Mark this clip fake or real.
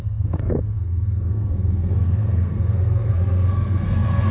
fake